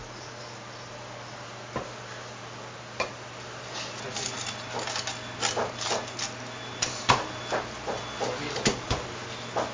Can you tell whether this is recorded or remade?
recorded